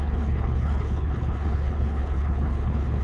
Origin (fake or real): fake